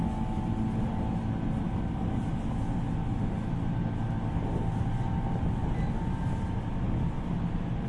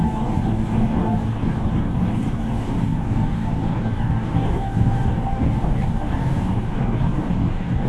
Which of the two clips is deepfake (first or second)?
second